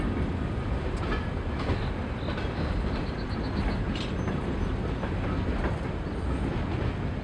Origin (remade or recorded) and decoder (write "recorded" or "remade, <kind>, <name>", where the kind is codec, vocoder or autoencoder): recorded